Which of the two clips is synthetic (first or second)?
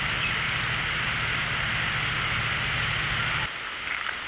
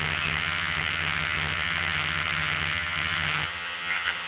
second